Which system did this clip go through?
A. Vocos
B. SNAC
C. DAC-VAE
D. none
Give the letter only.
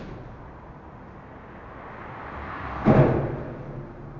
D